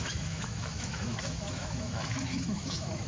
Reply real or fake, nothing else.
fake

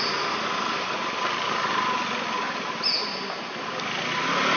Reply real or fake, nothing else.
real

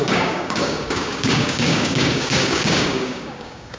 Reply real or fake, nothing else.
fake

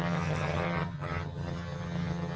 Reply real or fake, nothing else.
fake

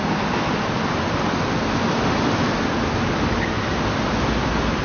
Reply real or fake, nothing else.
real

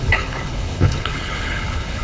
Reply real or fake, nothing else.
fake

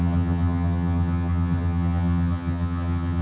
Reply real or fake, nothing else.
fake